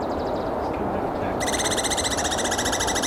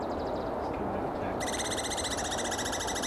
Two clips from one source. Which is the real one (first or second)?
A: second